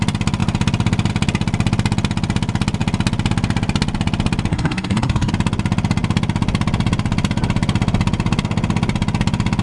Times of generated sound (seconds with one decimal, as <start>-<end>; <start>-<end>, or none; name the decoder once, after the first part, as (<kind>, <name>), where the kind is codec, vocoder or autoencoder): 4.5-5.3 (codec, SNAC)